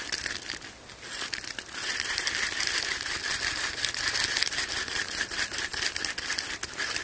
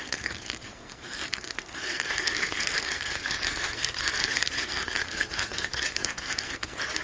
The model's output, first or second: second